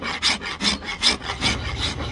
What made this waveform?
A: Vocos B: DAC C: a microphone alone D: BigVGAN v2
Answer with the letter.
C